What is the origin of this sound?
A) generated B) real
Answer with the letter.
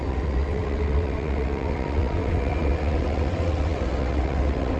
A